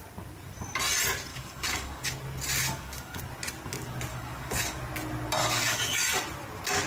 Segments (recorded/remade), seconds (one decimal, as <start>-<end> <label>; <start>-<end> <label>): 0.0-1.3 recorded; 1.3-2.1 remade; 2.1-2.6 recorded; 2.6-3.2 remade; 3.2-4.1 recorded; 4.1-4.8 remade; 4.8-5.4 recorded; 5.4-6.2 remade; 6.2-6.9 recorded